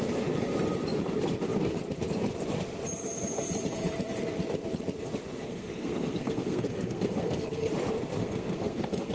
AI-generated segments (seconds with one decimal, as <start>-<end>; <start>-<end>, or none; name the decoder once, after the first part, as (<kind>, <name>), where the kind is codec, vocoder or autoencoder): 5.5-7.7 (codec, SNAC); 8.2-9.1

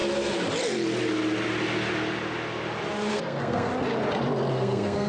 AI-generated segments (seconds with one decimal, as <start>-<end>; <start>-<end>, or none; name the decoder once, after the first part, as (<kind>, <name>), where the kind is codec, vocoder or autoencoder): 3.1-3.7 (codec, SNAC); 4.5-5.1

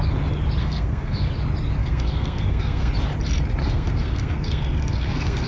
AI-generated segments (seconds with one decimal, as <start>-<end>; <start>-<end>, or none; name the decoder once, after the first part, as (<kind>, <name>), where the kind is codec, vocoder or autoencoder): 0.6-1.3 (codec, SNAC); 1.8-2.9; 3.6-5.5

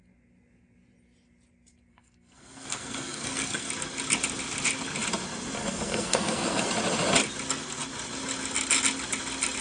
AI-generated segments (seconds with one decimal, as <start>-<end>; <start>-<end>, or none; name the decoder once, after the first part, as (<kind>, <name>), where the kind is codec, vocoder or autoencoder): 1.9-3.7 (codec, SNAC); 5.6-6.7

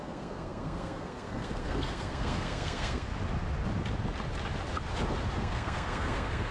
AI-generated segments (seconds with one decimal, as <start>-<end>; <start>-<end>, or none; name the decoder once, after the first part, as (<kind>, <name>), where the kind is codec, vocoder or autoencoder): 0.0-3.1 (codec, SNAC); 5.4-6.5

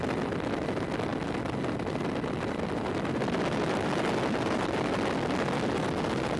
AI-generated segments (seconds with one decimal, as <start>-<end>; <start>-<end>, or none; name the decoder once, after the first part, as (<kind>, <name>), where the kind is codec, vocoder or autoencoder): none

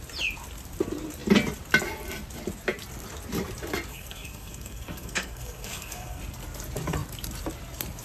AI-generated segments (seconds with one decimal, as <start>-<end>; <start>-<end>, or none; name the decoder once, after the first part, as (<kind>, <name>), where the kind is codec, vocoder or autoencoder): 3.9-6.2 (codec, SNAC)

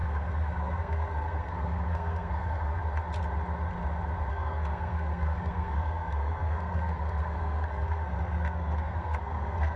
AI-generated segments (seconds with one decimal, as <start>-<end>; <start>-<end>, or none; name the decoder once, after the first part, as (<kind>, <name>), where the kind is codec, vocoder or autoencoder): 0.0-2.8 (codec, SNAC); 4.3-9.8